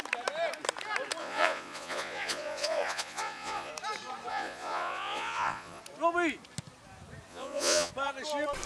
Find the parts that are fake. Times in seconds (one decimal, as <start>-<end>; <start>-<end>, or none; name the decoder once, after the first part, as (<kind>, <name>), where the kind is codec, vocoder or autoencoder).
1.2-3.7 (vocoder, Vocos); 4.3-5.8; 7.3-7.9